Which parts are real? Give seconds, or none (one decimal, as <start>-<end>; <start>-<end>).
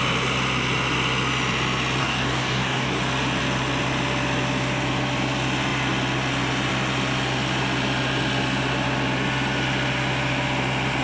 0.0-2.0; 3.0-11.0